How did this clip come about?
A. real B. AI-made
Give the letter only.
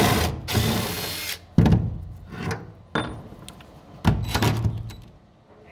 A